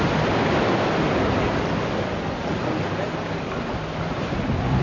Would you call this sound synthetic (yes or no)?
no